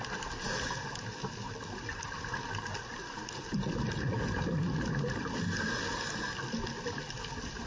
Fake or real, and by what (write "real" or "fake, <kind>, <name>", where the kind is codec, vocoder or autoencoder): real